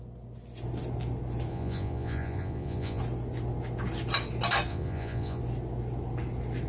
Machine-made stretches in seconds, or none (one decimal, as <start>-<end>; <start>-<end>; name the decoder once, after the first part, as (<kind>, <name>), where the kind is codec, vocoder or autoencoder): 1.5-3.0 (vocoder, Vocos); 4.7-5.4

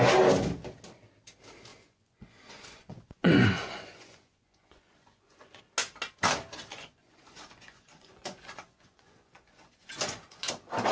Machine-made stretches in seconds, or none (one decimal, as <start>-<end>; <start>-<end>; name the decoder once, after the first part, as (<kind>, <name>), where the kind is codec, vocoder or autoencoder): 1.7-5.6 (vocoder, Vocos); 6.7-10.5